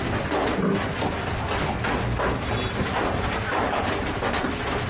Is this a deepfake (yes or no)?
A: no